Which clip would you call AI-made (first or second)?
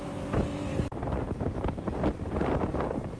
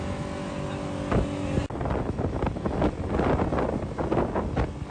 first